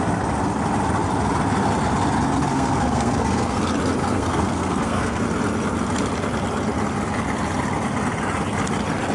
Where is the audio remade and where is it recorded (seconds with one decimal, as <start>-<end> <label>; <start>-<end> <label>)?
0.0-2.5 recorded; 2.5-3.6 remade; 3.6-4.0 recorded; 4.0-5.2 remade; 5.2-9.1 recorded